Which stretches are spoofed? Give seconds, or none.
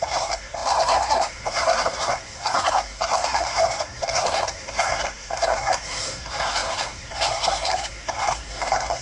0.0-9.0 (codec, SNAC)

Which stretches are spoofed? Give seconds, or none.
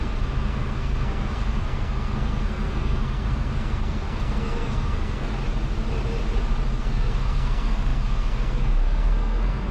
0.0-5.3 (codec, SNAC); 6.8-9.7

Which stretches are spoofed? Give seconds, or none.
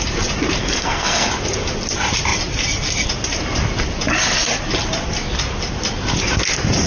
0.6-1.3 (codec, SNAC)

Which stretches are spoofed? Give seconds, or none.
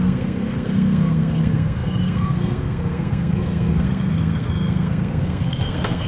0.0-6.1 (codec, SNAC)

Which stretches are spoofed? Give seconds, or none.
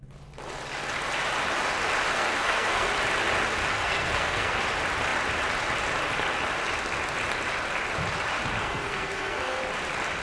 2.1-2.9 (codec, SNAC); 3.6-4.6; 8.6-9.6